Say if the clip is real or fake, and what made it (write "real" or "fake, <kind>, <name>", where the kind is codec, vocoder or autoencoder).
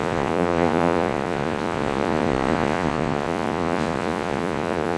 fake, vocoder, Vocos